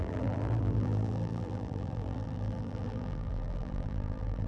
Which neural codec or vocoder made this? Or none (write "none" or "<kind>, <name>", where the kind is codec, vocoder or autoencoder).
vocoder, BigVGAN v2